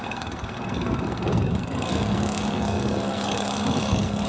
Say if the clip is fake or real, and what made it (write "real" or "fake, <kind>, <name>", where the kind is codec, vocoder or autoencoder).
fake, codec, SNAC